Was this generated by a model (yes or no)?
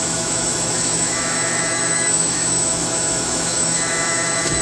yes